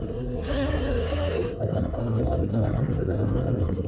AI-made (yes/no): yes